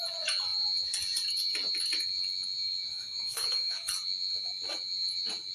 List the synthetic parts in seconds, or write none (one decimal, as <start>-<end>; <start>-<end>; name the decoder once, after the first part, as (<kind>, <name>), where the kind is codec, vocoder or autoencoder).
2.9-3.9 (autoencoder, DAC-VAE)